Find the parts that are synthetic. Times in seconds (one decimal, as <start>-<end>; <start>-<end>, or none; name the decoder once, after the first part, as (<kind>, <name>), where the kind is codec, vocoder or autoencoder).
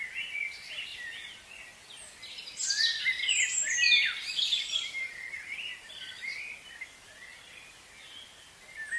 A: none